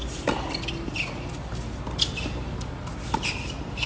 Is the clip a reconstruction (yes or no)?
no